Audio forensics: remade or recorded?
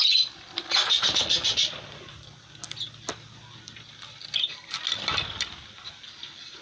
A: recorded